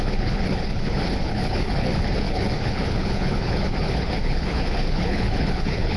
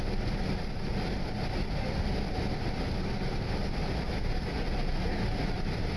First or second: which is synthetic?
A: first